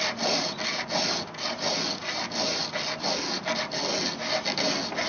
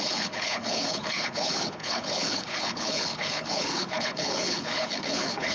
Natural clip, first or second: first